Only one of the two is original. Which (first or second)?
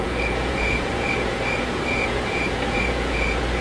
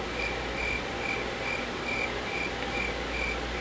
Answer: second